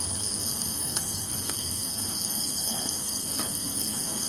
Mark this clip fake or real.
fake